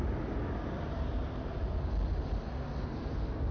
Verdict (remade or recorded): recorded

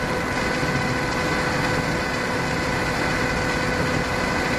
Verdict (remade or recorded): recorded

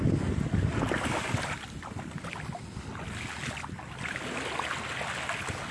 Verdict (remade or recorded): recorded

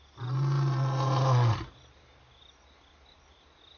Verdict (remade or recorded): recorded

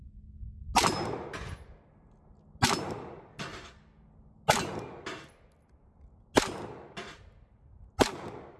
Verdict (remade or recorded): recorded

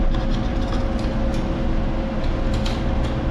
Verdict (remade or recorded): recorded